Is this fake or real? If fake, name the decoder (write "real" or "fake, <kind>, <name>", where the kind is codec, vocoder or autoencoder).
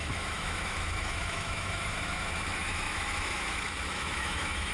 fake, autoencoder, DAC-VAE